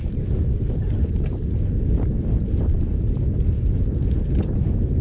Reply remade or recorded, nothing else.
remade